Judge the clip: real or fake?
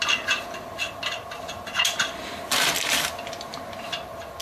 real